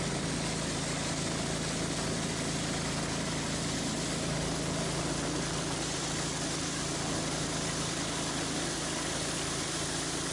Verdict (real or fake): real